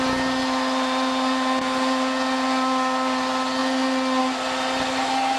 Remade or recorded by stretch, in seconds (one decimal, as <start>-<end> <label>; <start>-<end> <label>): 0.0-5.4 recorded